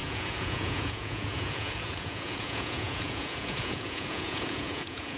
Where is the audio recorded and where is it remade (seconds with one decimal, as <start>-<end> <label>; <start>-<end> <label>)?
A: 0.0-5.2 remade